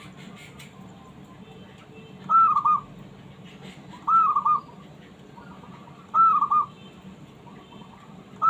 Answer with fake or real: real